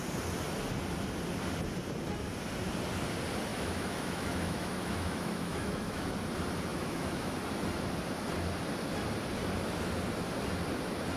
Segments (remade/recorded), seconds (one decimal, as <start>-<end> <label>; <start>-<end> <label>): 0.0-3.5 recorded; 3.5-6.1 remade; 6.1-6.7 recorded; 6.7-7.3 remade; 7.3-11.2 recorded